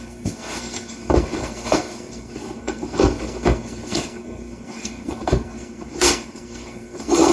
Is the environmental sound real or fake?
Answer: fake